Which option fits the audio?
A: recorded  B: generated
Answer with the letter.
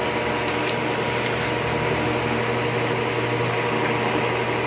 A